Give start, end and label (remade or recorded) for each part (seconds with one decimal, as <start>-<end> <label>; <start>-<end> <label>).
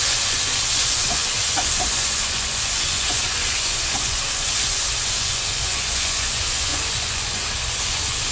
0.0-8.3 remade